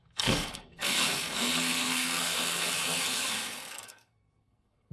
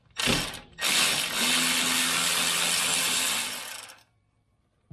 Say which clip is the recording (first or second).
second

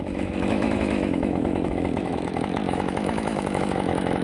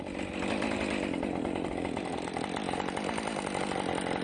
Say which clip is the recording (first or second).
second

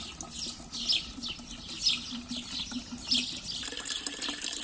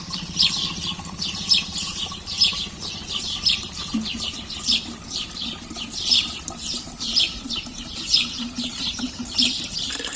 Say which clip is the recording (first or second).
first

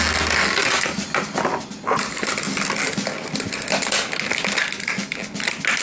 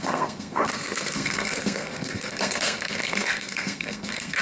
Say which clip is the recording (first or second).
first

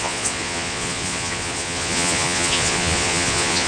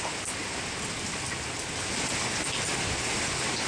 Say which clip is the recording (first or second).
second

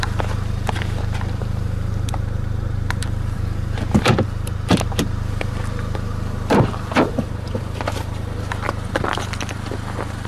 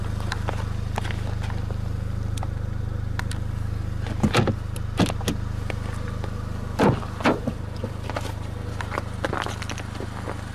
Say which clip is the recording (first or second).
second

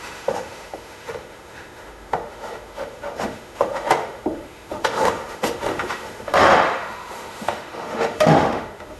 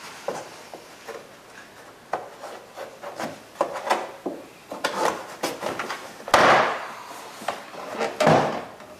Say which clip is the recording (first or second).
second